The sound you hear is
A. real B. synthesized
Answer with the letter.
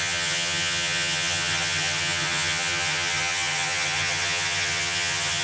B